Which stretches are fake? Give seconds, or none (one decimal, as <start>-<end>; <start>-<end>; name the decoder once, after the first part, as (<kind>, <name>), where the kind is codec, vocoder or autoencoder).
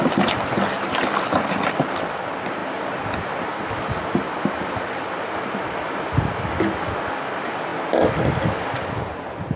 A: none